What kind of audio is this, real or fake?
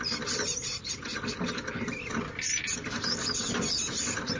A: real